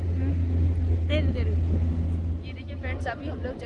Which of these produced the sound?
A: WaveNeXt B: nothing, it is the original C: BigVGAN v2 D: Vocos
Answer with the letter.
B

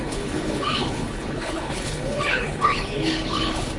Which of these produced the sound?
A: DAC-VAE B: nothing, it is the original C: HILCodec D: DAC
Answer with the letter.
C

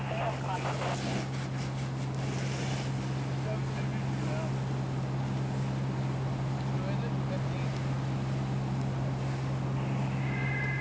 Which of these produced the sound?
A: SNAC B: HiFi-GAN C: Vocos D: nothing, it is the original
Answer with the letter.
D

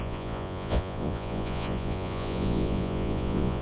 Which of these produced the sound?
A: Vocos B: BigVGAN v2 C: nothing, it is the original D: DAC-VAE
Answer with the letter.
A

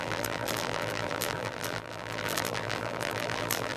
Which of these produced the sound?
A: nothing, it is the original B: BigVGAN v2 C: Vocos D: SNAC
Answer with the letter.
B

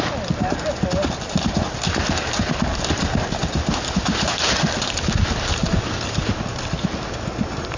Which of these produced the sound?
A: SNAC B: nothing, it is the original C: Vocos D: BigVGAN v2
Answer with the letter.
B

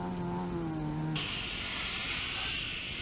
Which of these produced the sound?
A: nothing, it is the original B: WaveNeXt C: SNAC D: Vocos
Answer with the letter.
A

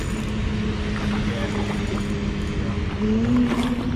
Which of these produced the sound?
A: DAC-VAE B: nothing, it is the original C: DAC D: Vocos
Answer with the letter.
B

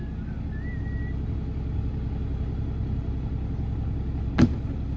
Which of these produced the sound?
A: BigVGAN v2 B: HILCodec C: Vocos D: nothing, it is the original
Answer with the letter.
D